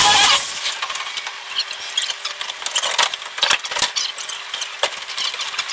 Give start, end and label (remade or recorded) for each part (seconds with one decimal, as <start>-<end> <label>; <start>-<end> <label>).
0.0-5.7 recorded